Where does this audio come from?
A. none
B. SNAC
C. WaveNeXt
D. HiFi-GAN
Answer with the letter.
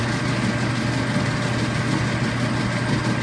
A